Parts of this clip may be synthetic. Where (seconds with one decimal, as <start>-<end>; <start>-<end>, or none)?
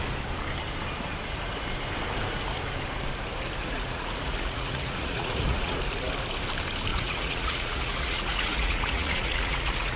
3.6-5.8; 6.9-10.0